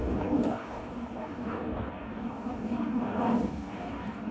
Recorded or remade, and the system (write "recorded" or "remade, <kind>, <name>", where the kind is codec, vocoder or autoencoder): remade, codec, DAC